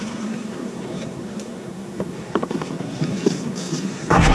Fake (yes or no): yes